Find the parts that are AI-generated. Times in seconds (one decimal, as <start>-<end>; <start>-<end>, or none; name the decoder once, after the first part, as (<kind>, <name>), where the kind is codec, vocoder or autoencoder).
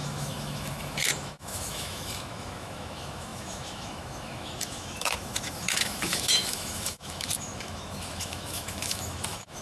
0.0-9.6 (autoencoder, DAC-VAE)